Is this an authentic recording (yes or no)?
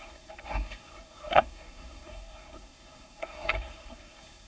no